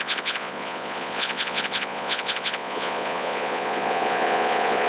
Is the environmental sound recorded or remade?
remade